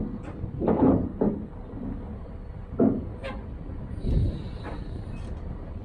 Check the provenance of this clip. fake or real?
real